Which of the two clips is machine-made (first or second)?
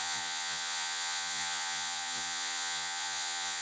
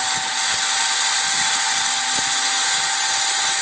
first